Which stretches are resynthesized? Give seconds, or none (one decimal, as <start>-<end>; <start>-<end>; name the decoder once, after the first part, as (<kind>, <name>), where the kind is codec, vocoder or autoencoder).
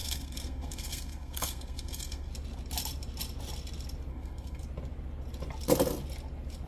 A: 0.0-2.3 (codec, SNAC); 4.1-4.6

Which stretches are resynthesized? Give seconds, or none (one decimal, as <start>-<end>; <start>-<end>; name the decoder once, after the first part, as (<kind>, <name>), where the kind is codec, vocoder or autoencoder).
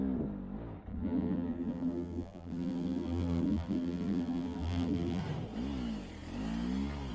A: 0.9-5.2 (vocoder, BigVGAN v2)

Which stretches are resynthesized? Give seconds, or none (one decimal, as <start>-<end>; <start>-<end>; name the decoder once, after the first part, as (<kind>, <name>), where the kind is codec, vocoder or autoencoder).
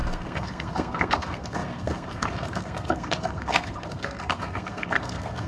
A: 0.0-5.5 (codec, SNAC)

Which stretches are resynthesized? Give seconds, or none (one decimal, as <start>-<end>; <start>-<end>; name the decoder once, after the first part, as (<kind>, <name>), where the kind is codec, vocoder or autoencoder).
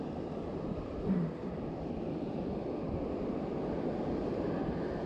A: 1.4-4.5 (vocoder, BigVGAN v2)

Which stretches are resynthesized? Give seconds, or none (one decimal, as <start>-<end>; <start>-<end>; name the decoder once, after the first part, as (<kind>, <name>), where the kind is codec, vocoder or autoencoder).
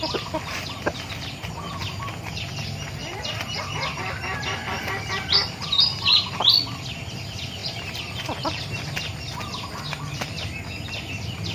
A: 3.0-3.6 (vocoder, BigVGAN v2); 7.6-8.6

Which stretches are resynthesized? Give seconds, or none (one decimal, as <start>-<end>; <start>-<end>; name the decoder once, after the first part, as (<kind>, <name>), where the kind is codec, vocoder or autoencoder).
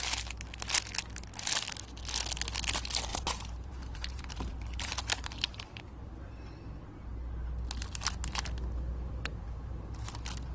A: 3.1-6.3 (vocoder, BigVGAN v2); 9.3-9.9